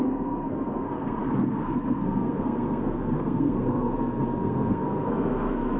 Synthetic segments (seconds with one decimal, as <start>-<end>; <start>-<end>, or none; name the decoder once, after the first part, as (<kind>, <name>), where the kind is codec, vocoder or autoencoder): 0.0-5.8 (codec, SNAC)